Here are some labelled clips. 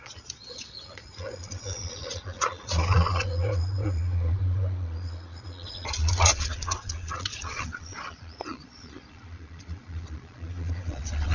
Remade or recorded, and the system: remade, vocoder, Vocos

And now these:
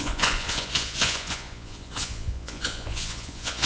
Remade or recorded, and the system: remade, vocoder, Vocos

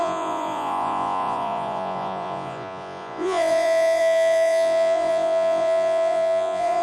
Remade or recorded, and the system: remade, vocoder, Vocos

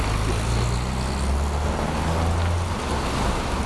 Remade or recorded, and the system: recorded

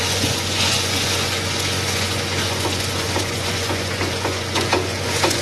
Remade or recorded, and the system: remade, vocoder, Vocos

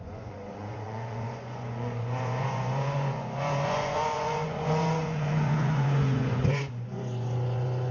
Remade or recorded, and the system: remade, vocoder, Vocos